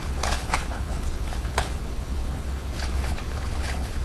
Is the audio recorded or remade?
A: remade